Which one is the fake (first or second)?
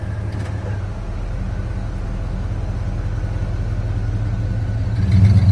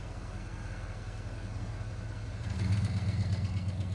second